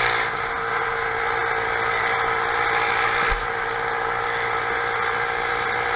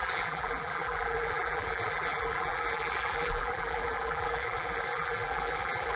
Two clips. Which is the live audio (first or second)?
first